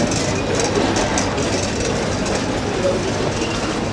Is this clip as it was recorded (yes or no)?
yes